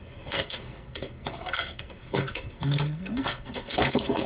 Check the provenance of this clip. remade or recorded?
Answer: remade